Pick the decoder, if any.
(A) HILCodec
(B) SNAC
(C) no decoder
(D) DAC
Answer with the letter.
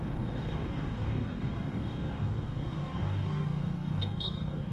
D